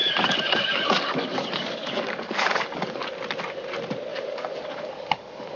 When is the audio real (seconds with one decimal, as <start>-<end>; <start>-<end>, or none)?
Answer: 3.0-4.1

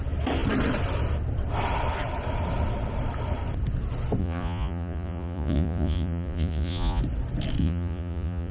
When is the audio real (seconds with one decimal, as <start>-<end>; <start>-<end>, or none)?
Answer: 0.0-4.2; 7.0-7.6

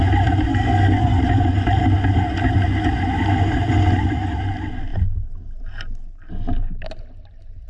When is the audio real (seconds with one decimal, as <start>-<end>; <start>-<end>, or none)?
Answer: 0.0-0.5; 1.2-7.7

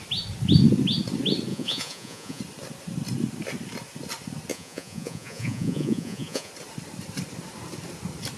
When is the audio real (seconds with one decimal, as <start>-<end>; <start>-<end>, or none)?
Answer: 0.0-1.5; 2.4-4.5; 6.5-8.4